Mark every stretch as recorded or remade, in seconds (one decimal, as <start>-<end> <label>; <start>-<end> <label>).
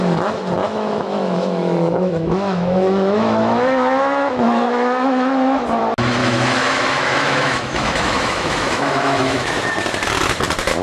0.0-0.6 recorded; 0.6-5.8 remade; 5.8-6.2 recorded; 6.2-9.6 remade; 9.6-10.8 recorded